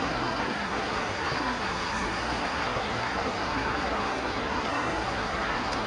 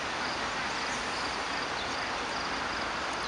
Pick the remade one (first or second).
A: first